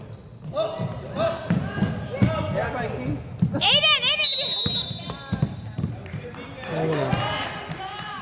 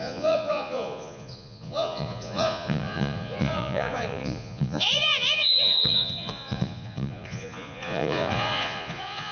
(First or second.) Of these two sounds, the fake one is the second